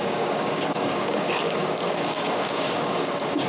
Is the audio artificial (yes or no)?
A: yes